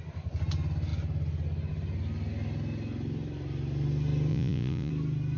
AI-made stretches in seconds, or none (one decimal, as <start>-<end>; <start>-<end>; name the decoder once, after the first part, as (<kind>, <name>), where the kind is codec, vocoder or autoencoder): 4.3-4.9 (vocoder, Vocos)